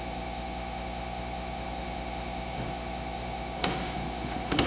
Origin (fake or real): fake